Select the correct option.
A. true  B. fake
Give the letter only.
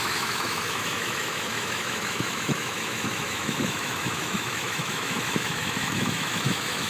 B